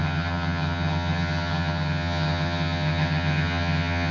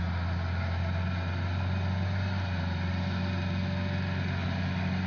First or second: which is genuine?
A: second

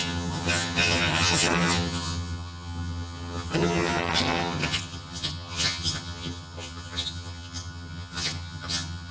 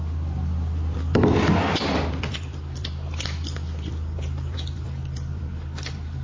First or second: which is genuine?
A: second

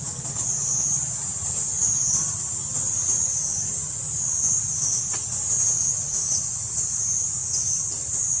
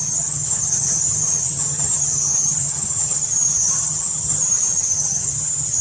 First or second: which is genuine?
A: first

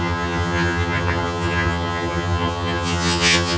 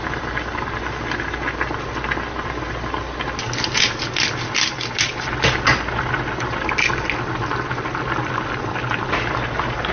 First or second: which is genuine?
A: second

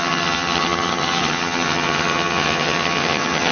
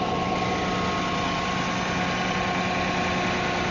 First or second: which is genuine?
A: second